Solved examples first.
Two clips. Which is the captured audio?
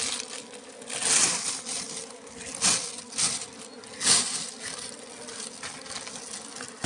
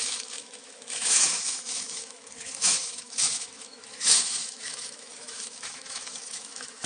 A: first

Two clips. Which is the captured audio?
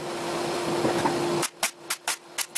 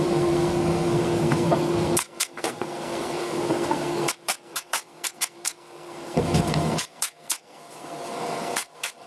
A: first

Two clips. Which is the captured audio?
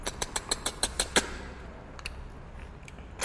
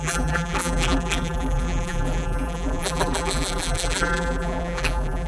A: first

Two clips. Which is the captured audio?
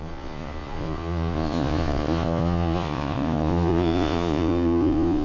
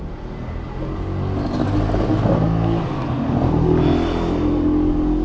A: second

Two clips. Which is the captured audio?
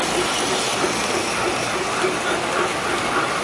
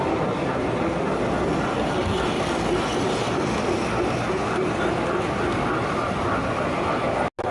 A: second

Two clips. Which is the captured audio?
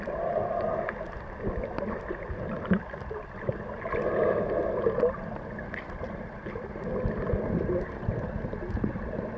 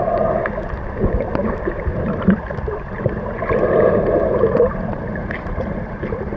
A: first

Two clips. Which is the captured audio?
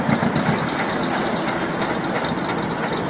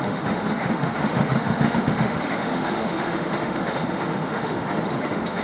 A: first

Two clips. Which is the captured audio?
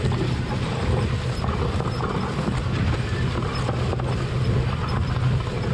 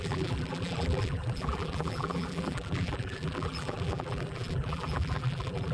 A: first